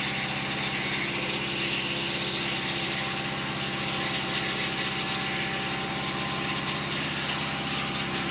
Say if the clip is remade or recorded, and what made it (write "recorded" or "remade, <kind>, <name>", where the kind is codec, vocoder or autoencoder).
recorded